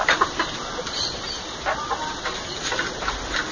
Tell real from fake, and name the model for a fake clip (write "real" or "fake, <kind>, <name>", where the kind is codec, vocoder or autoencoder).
real